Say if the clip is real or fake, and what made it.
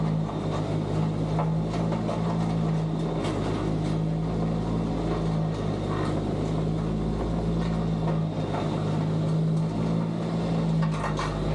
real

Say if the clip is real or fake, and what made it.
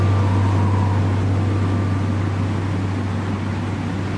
real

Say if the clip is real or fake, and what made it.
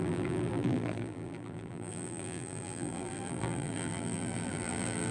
fake, vocoder, BigVGAN v2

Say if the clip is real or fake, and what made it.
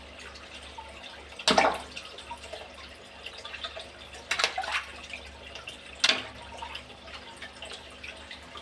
real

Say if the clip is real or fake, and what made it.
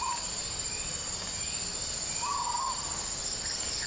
real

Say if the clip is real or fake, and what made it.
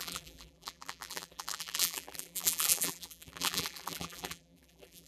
fake, vocoder, BigVGAN v2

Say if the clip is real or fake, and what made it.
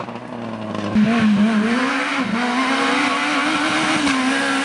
real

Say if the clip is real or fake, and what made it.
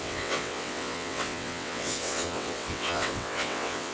fake, vocoder, WaveNeXt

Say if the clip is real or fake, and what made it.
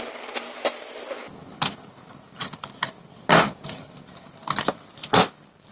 real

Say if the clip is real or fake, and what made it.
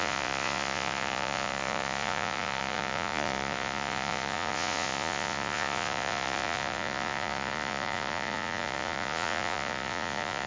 fake, vocoder, Vocos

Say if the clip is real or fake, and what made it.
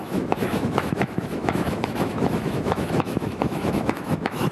fake, autoencoder, DAC-VAE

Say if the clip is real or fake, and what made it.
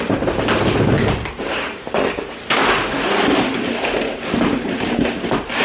real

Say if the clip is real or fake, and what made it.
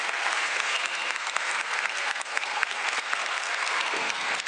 fake, codec, SNAC